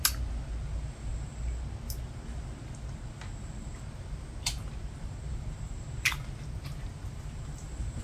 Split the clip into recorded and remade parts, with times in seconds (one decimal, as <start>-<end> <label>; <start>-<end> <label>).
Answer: 0.0-8.0 recorded